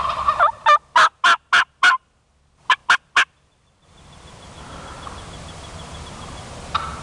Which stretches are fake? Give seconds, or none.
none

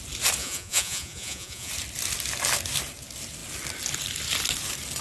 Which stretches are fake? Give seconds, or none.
0.4-1.7

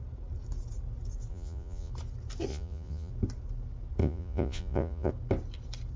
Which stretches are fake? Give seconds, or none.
1.3-1.9; 2.5-3.1; 4.0-5.1